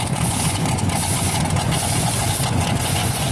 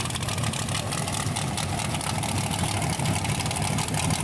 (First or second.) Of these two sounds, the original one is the second